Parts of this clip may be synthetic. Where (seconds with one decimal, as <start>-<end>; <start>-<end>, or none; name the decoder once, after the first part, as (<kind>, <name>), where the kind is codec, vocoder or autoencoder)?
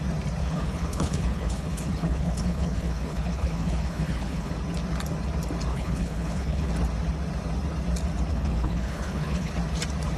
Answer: 0.4-4.5 (codec, HILCodec); 5.7-6.7; 8.3-9.5